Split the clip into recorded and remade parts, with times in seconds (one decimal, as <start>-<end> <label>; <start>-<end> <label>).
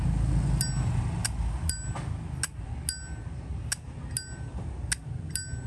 0.0-5.7 recorded